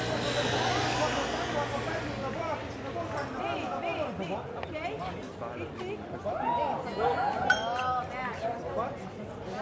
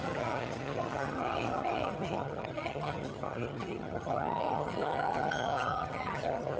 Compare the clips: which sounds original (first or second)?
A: first